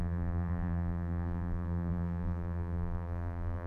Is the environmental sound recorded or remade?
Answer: remade